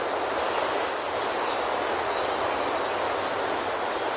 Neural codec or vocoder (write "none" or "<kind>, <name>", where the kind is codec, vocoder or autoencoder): none